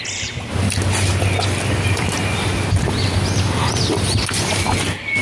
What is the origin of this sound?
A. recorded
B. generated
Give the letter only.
A